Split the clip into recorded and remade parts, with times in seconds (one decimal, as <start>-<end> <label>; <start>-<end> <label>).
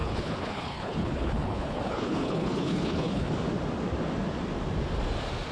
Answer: 0.0-3.3 remade; 3.3-5.5 recorded